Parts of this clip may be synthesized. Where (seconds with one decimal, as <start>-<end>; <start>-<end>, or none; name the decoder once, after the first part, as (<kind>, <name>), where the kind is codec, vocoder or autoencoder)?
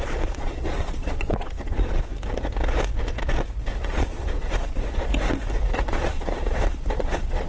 0.0-2.1 (vocoder, Vocos); 3.8-5.1; 5.7-7.5